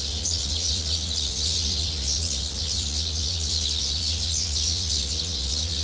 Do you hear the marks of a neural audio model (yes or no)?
yes